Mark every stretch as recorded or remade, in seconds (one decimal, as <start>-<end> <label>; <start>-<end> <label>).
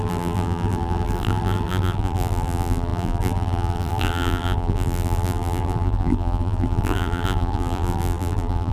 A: 0.0-8.7 remade